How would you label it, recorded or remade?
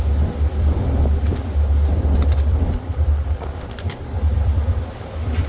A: remade